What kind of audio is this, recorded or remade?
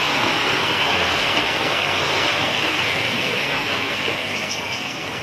remade